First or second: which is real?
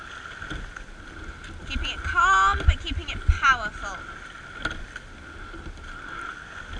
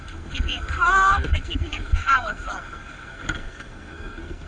first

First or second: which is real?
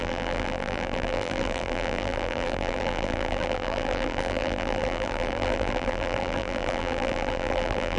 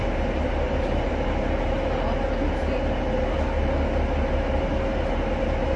second